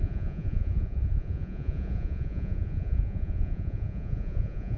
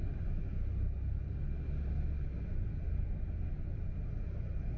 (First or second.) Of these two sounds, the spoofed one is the first